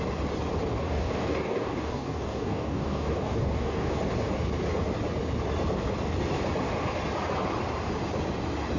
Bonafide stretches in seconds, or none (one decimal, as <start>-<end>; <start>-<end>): 0.0-0.8; 4.0-8.8